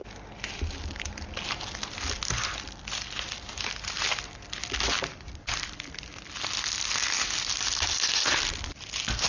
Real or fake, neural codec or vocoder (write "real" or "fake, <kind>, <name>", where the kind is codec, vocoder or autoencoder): real